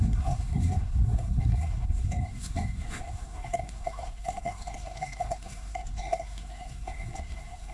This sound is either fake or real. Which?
fake